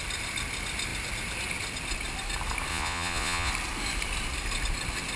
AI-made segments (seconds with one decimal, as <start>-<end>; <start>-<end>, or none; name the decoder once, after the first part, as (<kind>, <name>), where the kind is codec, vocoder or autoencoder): 2.7-3.5 (vocoder, Vocos)